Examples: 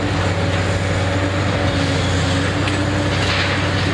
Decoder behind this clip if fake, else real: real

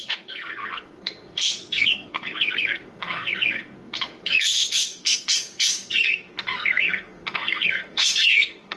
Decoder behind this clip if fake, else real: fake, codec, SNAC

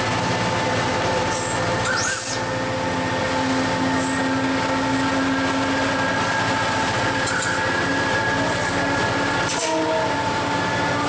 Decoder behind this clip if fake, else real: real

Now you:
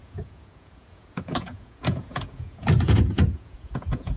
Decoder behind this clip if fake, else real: fake, vocoder, Vocos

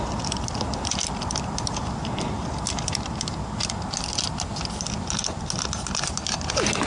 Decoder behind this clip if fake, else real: real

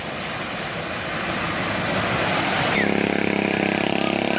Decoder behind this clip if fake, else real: real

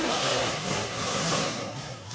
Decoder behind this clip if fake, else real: fake, codec, SNAC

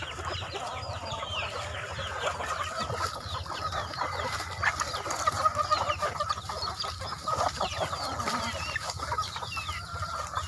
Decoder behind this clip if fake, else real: fake, vocoder, BigVGAN v2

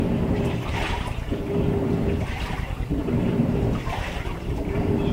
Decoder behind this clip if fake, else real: fake, vocoder, BigVGAN v2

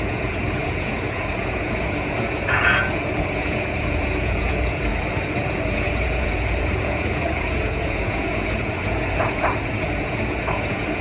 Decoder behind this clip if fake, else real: fake, vocoder, Vocos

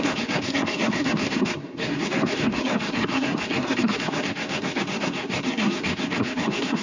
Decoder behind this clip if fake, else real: fake, codec, SNAC